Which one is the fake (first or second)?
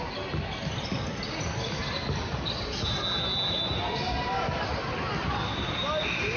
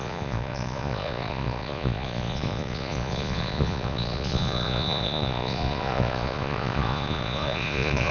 second